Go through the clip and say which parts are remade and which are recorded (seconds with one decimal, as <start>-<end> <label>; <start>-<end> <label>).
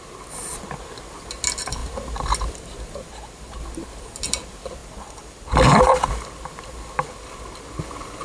0.0-8.2 recorded